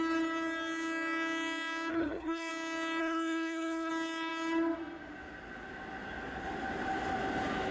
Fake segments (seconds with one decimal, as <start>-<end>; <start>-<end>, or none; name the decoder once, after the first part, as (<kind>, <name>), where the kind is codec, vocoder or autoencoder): 1.9-2.5 (codec, SNAC); 3.0-3.9

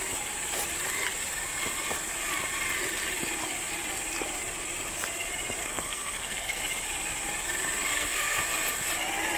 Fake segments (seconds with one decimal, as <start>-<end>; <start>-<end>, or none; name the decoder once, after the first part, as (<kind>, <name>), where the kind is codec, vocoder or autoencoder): 5.6-6.6 (codec, SNAC); 7.9-8.4

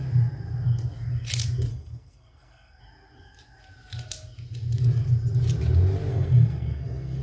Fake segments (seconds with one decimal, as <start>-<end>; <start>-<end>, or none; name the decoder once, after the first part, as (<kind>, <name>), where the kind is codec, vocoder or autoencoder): 1.7-2.8 (codec, SNAC); 6.1-7.2

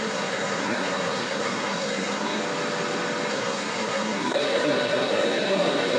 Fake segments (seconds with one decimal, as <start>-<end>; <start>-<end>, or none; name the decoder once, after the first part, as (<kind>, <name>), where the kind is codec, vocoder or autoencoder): 0.0-2.4 (codec, SNAC); 3.3-6.0